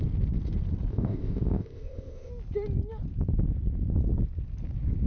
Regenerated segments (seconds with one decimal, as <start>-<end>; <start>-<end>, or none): 0.9-2.3